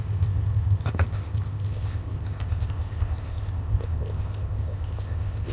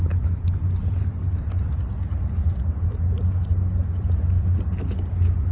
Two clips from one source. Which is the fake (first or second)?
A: first